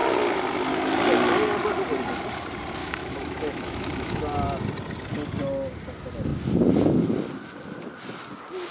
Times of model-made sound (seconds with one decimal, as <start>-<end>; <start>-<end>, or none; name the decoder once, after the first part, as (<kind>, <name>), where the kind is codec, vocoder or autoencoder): 2.8-4.2 (autoencoder, DAC-VAE)